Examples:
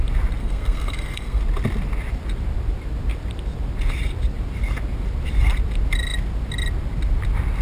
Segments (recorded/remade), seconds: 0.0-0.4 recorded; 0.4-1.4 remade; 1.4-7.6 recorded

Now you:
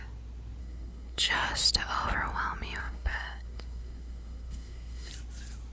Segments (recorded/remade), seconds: 0.0-0.6 recorded; 0.6-1.3 remade; 1.3-2.8 recorded; 2.8-5.1 remade; 5.1-5.7 recorded

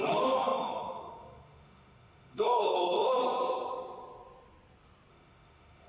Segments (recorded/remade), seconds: 0.0-3.2 remade; 3.2-5.1 recorded; 5.1-5.9 remade

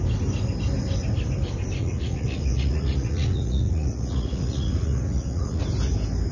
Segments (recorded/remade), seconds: 0.0-1.8 recorded; 1.8-5.6 remade; 5.6-6.3 recorded

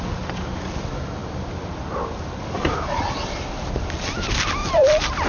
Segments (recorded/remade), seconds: 0.0-5.3 recorded